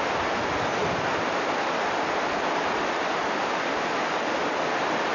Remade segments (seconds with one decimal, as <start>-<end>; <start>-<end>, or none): none